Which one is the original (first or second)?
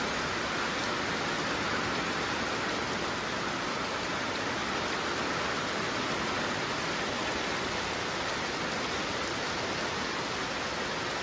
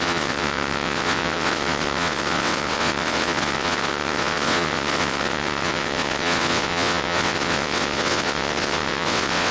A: first